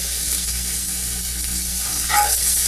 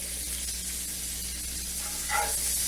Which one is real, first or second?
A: second